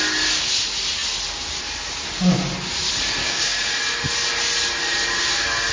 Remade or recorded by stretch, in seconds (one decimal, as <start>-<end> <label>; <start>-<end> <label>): 0.0-3.2 recorded; 3.2-3.7 remade; 3.7-5.7 recorded